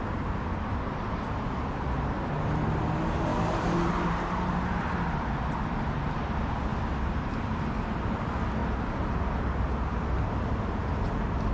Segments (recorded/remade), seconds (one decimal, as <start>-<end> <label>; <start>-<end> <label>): 0.0-3.3 recorded; 3.3-5.6 remade; 5.6-9.9 recorded; 9.9-10.9 remade; 10.9-11.5 recorded